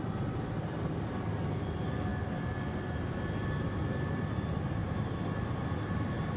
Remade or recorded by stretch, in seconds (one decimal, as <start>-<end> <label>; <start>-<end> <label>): 0.0-6.4 recorded